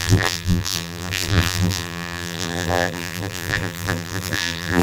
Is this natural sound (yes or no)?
no